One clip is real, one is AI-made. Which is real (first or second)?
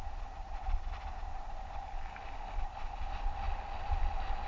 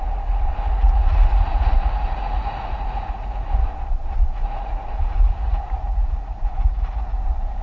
first